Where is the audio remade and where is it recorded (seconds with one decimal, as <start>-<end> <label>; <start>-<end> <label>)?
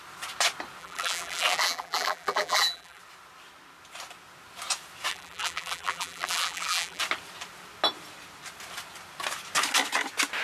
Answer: 0.0-0.8 recorded; 0.8-3.0 remade; 3.0-5.1 recorded; 5.1-7.0 remade; 7.0-10.4 recorded